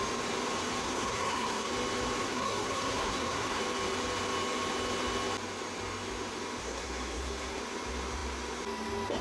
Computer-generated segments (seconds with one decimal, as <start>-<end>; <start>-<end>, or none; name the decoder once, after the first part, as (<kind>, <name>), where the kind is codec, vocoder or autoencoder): 0.8-1.7 (codec, SNAC); 2.2-3.6; 6.6-7.6